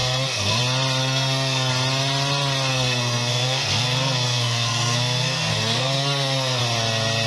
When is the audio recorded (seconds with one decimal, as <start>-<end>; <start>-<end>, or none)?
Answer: 0.6-1.0; 1.7-2.7; 6.6-7.3